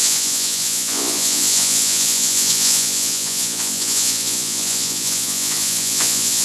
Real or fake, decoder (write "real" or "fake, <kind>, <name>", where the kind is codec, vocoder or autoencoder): fake, vocoder, Vocos